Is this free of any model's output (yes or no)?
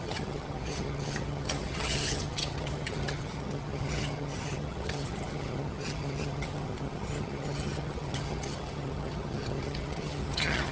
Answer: no